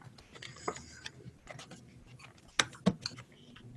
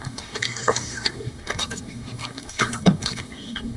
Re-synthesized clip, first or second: second